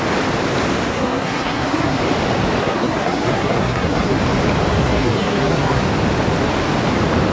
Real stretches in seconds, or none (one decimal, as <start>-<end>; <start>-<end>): 0.0-0.9; 2.0-2.6; 4.2-4.7; 5.8-7.3